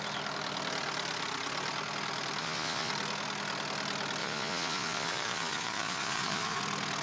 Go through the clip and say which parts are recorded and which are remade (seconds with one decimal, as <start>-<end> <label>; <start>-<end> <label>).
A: 0.0-2.4 recorded; 2.4-2.9 remade; 2.9-4.2 recorded; 4.2-6.6 remade; 6.6-7.0 recorded